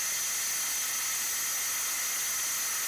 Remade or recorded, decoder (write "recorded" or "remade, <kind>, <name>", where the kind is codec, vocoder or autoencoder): recorded